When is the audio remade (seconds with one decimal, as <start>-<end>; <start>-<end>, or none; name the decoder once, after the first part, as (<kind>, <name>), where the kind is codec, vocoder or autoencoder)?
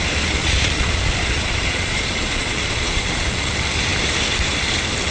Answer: 0.4-3.5 (vocoder, Vocos)